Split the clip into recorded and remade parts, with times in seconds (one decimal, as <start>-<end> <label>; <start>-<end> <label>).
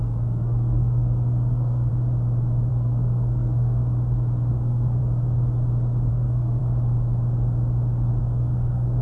0.0-1.9 remade; 1.9-2.7 recorded; 2.7-3.8 remade; 3.8-4.5 recorded; 4.5-5.0 remade; 5.0-6.1 recorded; 6.1-6.6 remade; 6.6-8.2 recorded; 8.2-9.0 remade